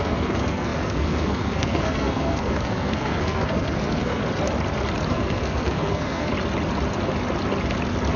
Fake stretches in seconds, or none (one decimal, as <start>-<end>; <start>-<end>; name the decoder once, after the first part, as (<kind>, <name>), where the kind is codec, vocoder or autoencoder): 0.0-4.2 (codec, SNAC); 5.1-6.3